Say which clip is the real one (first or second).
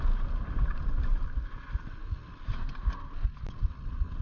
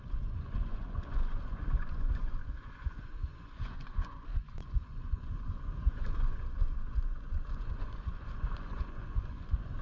first